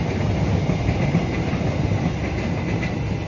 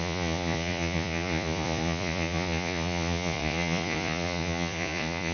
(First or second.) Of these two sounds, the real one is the first